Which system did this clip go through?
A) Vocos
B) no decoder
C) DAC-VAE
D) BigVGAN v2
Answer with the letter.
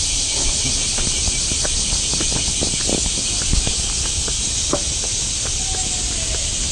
B